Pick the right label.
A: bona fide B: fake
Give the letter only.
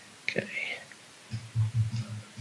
A